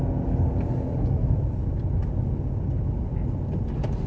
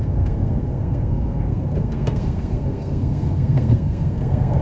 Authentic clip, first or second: first